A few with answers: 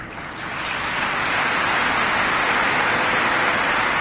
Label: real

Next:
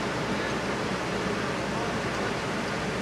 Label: real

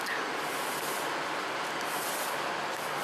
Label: real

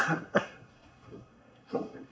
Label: fake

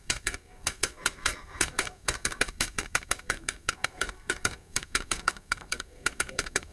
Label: fake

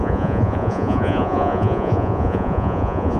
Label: fake